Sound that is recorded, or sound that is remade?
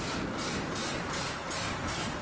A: recorded